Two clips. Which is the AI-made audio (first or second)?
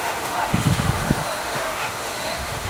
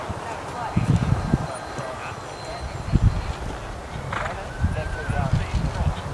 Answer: first